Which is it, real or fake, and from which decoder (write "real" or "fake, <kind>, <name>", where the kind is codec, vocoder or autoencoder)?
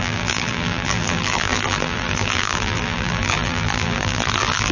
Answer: fake, vocoder, BigVGAN v2